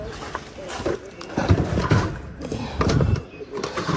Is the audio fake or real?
real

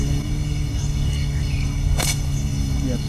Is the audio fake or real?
fake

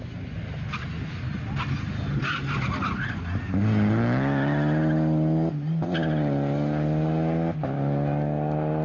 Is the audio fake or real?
real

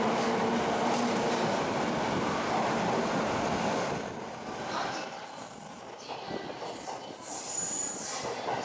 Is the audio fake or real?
real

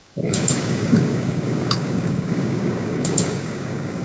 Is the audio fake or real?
fake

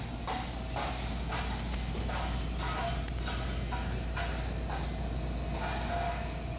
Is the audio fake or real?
real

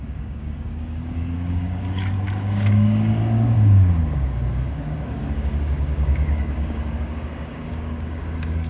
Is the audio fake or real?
fake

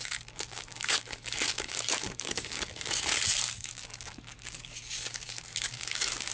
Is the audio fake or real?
fake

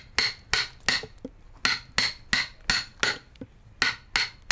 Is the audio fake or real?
real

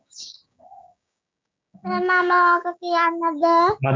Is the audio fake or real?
fake